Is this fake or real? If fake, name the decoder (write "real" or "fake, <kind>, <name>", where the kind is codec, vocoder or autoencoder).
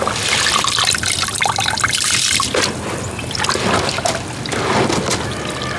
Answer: real